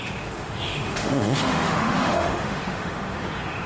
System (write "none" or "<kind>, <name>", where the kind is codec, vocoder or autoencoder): autoencoder, DAC-VAE